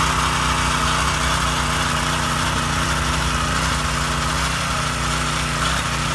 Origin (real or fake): real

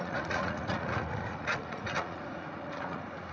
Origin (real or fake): fake